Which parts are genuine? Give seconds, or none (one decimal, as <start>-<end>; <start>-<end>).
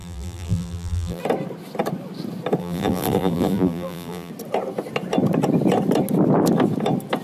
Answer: 1.2-2.6; 4.3-7.2